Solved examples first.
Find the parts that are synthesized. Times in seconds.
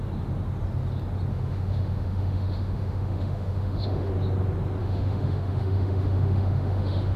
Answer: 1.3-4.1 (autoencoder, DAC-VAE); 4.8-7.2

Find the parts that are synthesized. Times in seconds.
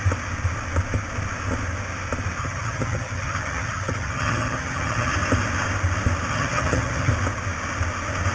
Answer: 2.4-5.1 (vocoder, HiFi-GAN); 6.3-7.1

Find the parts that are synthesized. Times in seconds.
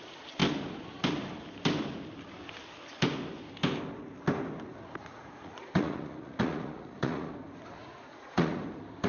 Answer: 5.0-7.3 (vocoder, Vocos); 7.8-8.6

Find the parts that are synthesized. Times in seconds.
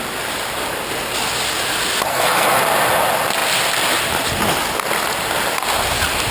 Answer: 2.1-2.6 (codec, SNAC)